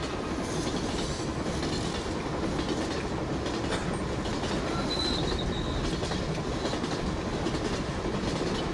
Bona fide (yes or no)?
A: yes